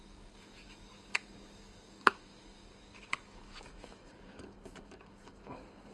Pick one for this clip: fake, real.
fake